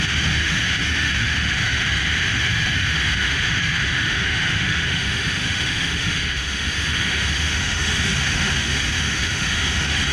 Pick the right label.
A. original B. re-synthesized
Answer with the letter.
B